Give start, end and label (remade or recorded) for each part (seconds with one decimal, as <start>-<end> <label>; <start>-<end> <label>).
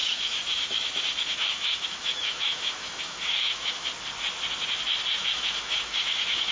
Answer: 0.0-3.9 remade; 3.9-5.2 recorded; 5.2-6.5 remade